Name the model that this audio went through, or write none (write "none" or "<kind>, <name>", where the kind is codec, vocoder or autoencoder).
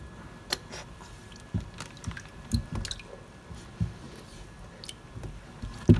none